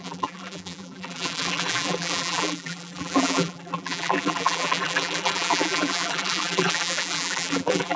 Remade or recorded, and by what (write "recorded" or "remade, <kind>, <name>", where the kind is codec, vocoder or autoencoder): remade, vocoder, BigVGAN v2